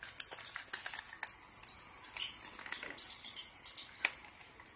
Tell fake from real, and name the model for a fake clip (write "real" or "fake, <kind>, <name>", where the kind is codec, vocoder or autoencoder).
real